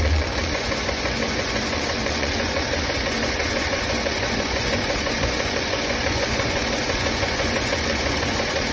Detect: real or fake fake